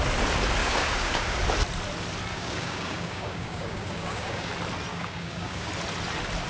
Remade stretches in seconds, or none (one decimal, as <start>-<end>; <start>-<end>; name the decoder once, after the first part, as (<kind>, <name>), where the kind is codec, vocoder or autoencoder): 0.6-1.4 (codec, DAC); 2.3-4.5; 4.9-5.7

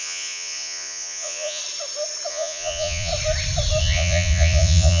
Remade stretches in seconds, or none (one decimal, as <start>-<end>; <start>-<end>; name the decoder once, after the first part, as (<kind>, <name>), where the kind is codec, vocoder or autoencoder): 0.0-1.6 (vocoder, Vocos); 2.3-3.1; 3.8-5.0

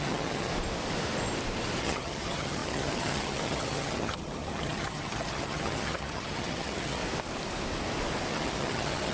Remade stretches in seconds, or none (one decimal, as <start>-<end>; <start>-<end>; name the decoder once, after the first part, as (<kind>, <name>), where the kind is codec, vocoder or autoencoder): 0.0-0.5 (vocoder, HiFi-GAN); 1.8-7.0; 8.3-9.1

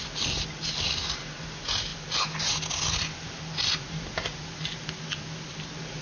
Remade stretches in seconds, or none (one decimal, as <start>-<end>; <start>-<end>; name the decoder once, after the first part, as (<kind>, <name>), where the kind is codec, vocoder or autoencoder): none

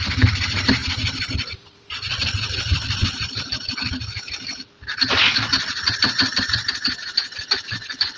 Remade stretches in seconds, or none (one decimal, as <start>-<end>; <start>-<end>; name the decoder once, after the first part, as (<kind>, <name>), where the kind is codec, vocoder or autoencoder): none

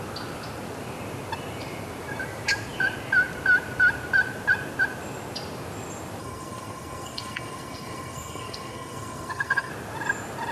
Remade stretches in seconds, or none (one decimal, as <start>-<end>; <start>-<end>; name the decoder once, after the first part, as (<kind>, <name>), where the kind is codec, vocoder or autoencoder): 6.2-9.7 (codec, SNAC)